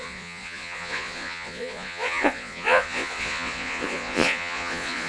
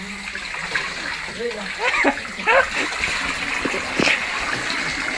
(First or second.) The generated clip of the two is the first